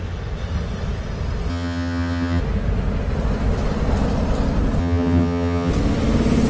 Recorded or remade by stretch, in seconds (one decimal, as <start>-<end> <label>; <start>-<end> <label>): 0.0-1.5 recorded; 1.5-2.4 remade; 2.4-4.8 recorded; 4.8-5.7 remade; 5.7-6.5 recorded